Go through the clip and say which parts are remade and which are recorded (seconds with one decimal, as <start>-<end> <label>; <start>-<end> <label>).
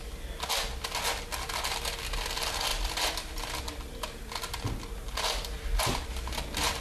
0.0-6.8 recorded